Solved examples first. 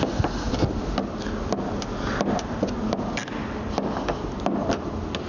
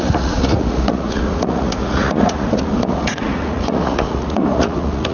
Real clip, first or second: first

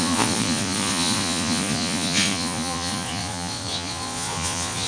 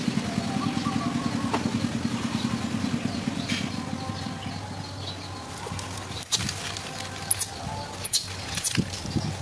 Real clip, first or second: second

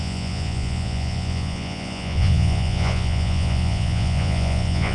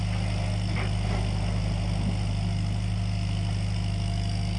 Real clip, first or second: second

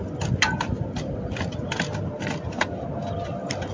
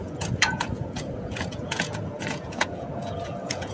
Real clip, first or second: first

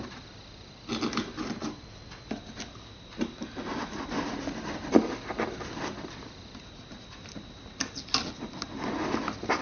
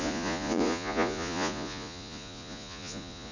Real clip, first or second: first